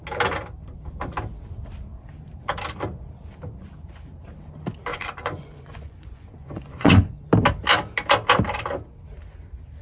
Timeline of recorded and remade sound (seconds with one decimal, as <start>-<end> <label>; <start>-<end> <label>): 0.0-4.9 recorded; 4.9-7.2 remade; 7.2-9.8 recorded